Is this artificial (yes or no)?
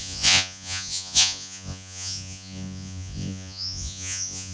yes